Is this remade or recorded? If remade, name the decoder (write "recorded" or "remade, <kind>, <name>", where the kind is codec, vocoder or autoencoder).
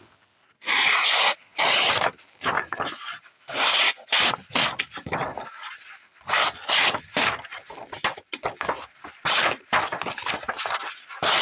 recorded